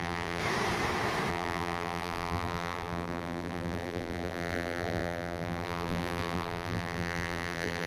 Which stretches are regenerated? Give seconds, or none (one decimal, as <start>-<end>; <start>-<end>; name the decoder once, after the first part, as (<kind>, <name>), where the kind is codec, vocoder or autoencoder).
0.0-0.4 (vocoder, BigVGAN v2); 1.3-7.9